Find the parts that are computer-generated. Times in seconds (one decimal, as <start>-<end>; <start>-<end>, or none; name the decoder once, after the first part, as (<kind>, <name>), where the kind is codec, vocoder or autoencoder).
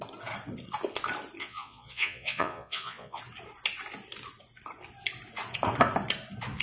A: 1.4-3.2 (vocoder, Vocos)